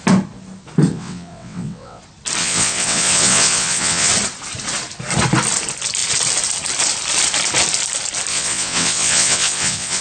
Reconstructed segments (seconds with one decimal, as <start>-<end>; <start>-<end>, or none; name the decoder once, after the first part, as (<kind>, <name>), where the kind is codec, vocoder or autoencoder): 0.9-2.0 (vocoder, WaveNeXt); 2.4-4.1; 8.3-10.0